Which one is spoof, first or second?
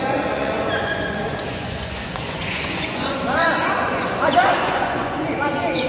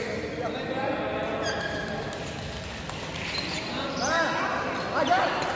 first